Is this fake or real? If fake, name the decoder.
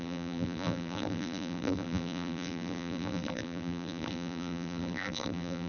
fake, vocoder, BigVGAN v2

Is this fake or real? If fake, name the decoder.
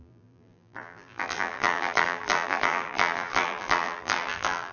fake, vocoder, BigVGAN v2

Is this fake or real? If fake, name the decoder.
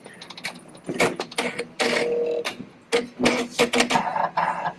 real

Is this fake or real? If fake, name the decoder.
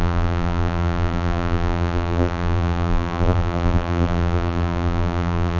fake, vocoder, BigVGAN v2